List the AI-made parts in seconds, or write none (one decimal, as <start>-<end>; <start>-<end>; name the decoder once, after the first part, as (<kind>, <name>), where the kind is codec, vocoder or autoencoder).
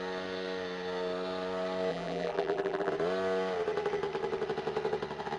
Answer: 1.9-2.9 (vocoder, BigVGAN v2)